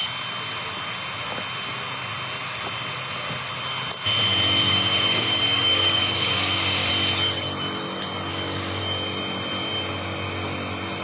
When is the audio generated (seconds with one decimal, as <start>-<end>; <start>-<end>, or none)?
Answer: 4.6-6.9; 8.3-8.8